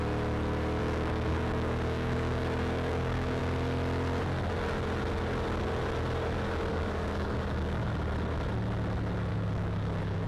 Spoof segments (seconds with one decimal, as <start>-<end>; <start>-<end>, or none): 0.8-3.4; 6.7-7.9; 9.3-10.3